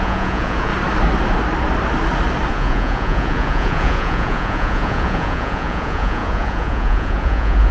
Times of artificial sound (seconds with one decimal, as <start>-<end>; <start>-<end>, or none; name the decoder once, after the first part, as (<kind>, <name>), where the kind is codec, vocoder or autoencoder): 0.0-0.7 (vocoder, Vocos); 2.5-7.7